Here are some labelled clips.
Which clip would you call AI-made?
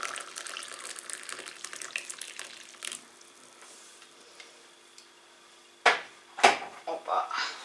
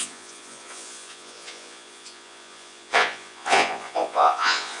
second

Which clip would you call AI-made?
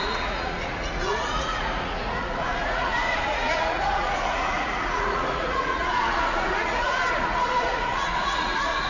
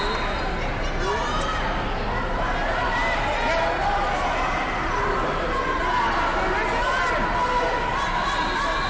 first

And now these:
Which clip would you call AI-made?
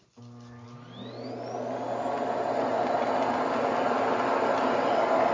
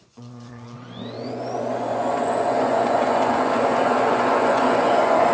second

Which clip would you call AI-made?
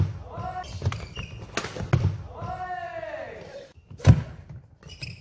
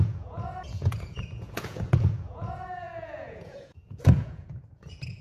second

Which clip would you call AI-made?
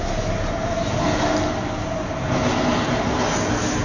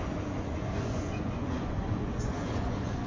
second